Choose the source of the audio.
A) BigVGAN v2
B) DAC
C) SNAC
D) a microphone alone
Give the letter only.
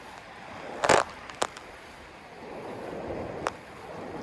D